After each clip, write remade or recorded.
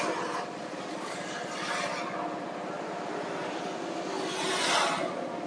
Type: recorded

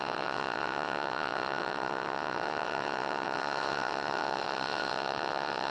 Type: remade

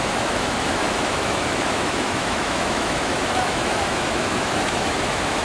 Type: remade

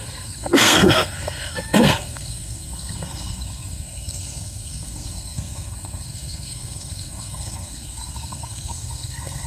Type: remade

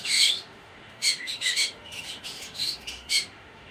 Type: remade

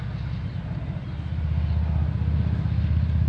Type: recorded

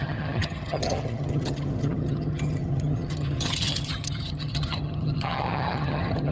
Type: remade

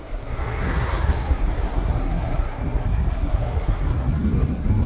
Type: remade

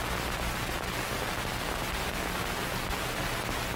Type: recorded